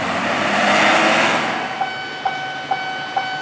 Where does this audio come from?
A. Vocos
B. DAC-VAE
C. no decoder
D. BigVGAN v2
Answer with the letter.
C